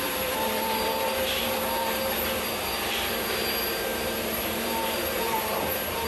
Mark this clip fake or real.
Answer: fake